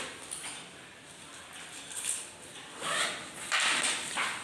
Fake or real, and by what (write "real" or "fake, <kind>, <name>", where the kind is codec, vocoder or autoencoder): real